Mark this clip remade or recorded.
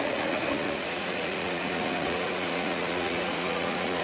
remade